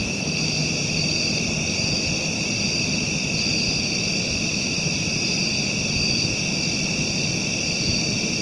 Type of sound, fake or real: real